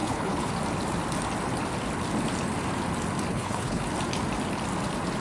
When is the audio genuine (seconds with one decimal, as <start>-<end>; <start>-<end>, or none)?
0.5-3.3; 3.8-5.2